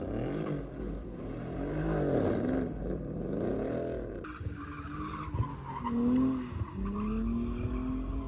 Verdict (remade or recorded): recorded